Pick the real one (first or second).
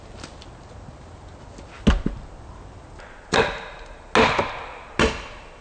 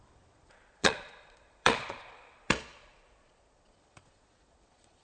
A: first